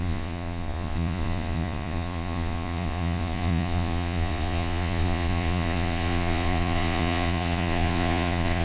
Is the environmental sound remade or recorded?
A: remade